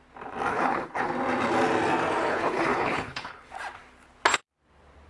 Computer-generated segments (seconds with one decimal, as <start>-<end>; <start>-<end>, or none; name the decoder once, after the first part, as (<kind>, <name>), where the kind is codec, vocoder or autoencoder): 0.5-1.1 (codec, HILCodec); 2.3-3.5